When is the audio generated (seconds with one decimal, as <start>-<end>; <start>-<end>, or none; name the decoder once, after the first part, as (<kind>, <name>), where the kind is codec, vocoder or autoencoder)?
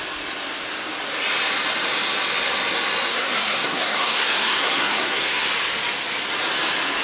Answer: 3.1-5.5 (codec, SNAC)